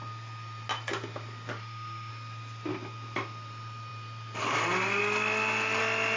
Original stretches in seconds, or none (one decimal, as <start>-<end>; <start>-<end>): 0.0-1.5; 2.1-6.2